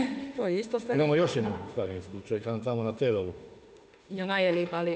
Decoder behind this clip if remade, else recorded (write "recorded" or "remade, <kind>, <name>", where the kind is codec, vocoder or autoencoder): remade, autoencoder, DAC-VAE